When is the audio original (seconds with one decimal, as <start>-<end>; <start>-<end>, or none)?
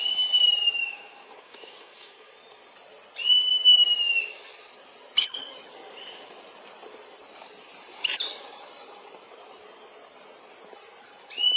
0.0-0.8; 2.3-11.6